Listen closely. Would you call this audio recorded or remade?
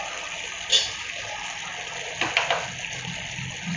recorded